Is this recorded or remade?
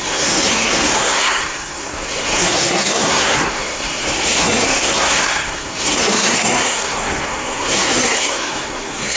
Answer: remade